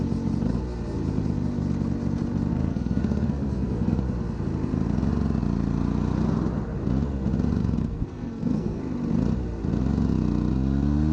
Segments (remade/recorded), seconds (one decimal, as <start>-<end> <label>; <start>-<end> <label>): 0.0-2.5 recorded; 2.5-4.0 remade; 4.0-7.6 recorded; 7.6-8.8 remade; 8.8-11.1 recorded